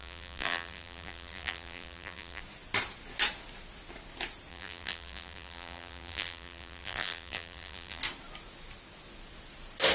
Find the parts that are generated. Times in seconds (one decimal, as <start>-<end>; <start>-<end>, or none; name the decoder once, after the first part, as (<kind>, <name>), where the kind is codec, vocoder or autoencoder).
0.0-2.4 (vocoder, BigVGAN v2); 4.5-8.0